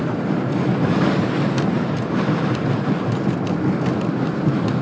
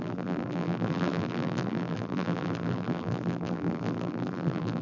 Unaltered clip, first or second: first